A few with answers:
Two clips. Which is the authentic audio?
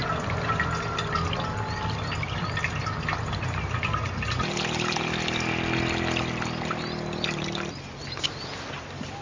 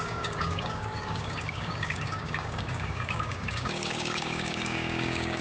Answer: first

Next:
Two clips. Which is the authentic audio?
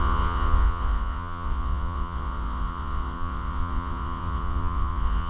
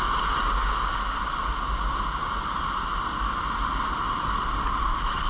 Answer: second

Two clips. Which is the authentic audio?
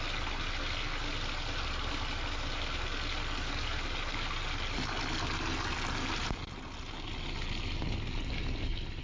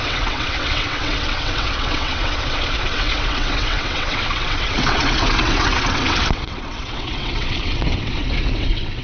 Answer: first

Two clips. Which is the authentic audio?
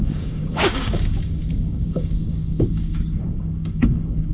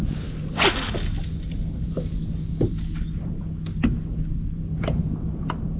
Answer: second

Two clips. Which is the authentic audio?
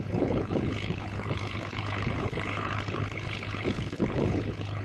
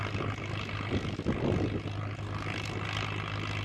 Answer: second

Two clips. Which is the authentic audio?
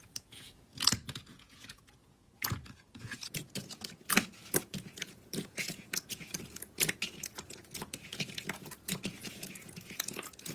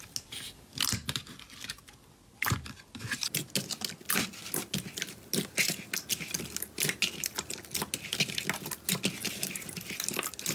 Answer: second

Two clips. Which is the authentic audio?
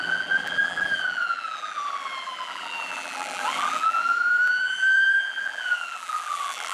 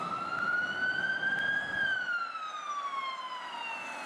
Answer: second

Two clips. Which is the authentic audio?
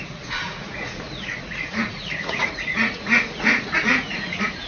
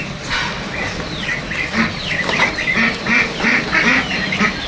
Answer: second